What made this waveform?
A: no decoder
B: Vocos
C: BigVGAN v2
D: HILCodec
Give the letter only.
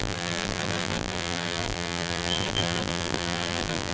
C